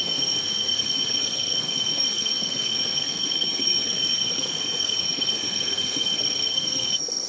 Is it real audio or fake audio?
fake